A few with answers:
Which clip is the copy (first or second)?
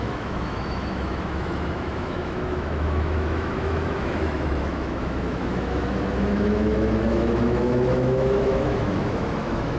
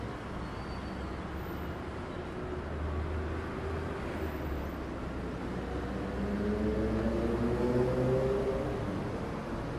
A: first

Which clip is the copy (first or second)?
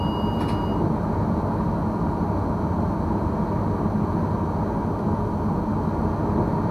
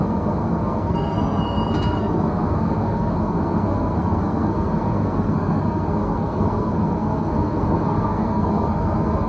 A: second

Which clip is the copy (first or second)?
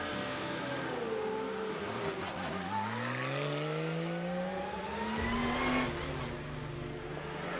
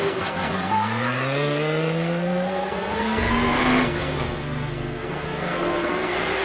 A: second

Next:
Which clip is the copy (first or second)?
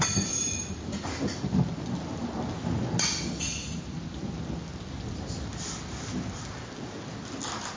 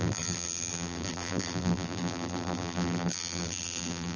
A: second